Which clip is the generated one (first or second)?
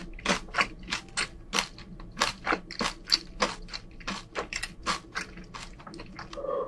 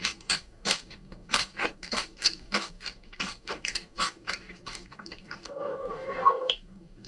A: second